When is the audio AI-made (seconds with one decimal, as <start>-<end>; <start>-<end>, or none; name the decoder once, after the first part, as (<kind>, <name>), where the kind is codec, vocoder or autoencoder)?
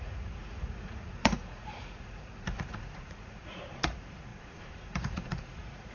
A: 0.0-5.9 (vocoder, Vocos)